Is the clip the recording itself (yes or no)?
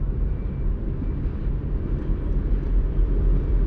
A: no